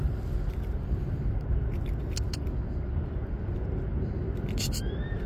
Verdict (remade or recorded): recorded